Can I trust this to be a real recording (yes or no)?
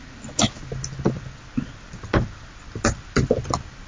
yes